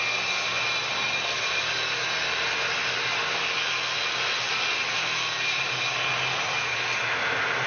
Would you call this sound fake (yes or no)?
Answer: no